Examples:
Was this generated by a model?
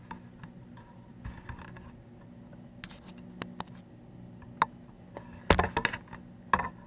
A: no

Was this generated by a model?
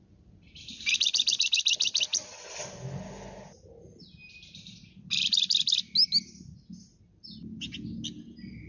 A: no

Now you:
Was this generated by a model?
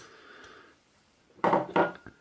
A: yes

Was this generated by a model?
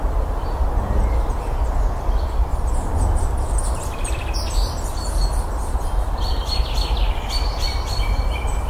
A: yes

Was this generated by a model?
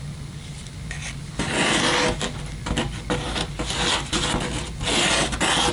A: no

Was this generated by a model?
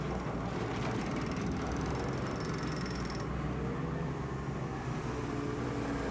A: no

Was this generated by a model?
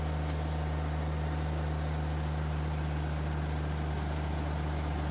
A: no